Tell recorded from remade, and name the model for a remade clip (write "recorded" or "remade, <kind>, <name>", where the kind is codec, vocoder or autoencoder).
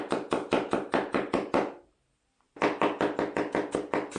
recorded